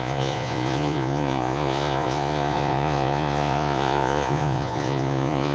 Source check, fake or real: fake